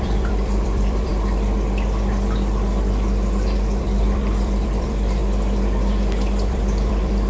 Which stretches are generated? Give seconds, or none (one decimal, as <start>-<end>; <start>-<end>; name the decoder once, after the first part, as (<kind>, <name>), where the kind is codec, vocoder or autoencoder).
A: 0.0-1.1 (vocoder, BigVGAN v2); 3.8-5.2; 6.5-7.3